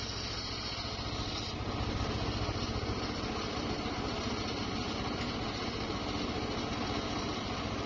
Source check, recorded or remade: recorded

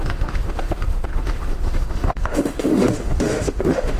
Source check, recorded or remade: remade